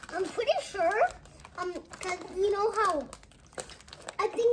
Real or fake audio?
real